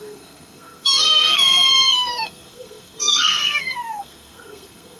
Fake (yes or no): yes